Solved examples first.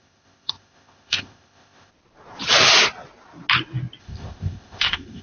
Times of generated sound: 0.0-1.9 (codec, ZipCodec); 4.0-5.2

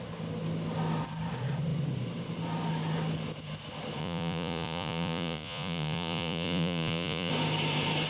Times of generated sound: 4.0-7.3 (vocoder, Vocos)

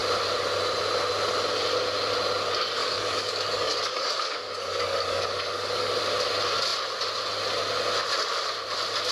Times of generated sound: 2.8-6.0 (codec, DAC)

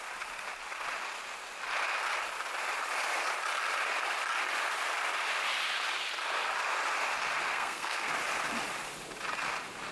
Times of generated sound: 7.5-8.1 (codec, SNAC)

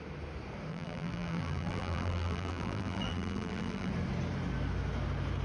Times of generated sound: 0.7-3.9 (vocoder, BigVGAN v2)

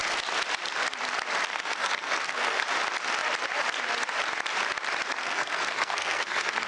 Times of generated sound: 1.5-2.6 (codec, SNAC); 5.2-6.7

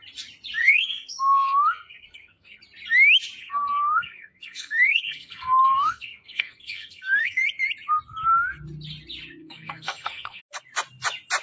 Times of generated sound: 0.6-2.6 (codec, SNAC); 3.4-7.4; 9.4-10.4

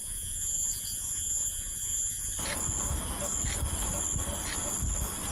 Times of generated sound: 0.0-2.3 (vocoder, Vocos)